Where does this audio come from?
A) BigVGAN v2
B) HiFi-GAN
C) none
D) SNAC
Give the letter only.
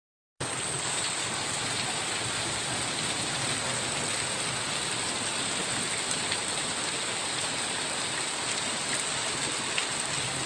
C